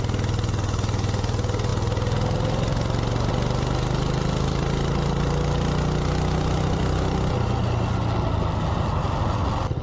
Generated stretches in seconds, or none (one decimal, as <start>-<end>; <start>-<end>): none